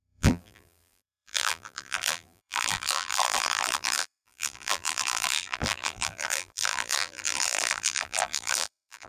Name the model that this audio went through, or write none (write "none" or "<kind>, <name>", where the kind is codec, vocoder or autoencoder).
vocoder, BigVGAN v2